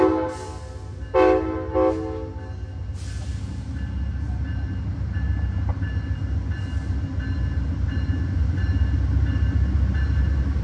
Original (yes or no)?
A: yes